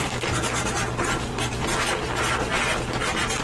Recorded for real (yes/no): yes